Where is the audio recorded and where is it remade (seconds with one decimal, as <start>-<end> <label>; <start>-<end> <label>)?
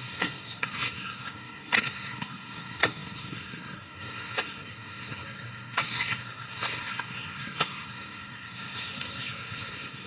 0.0-10.1 remade